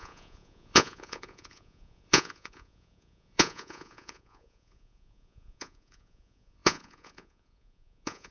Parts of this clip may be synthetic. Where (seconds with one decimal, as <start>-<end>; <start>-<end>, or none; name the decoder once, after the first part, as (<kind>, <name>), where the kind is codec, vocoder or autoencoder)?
0.0-8.3 (vocoder, Vocos)